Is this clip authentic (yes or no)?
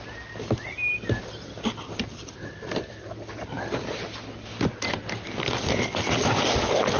yes